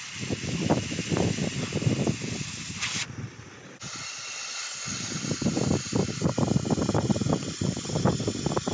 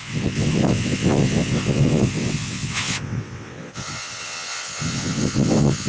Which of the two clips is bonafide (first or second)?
first